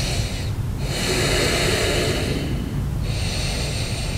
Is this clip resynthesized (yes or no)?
no